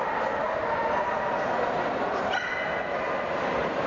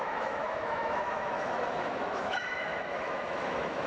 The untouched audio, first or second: first